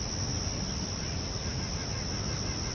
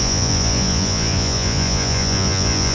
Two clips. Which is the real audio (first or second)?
first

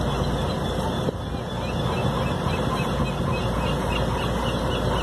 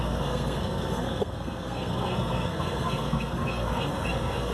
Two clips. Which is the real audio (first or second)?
first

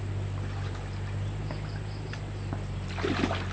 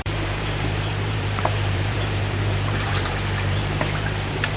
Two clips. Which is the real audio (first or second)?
first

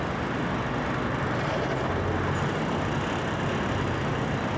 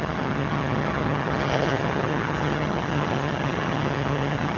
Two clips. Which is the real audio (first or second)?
first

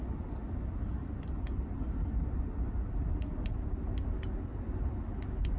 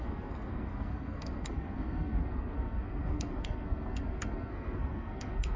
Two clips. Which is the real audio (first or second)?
first